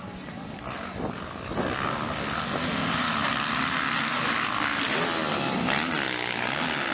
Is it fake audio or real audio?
real